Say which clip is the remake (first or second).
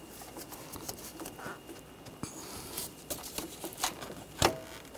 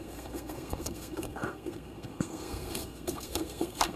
second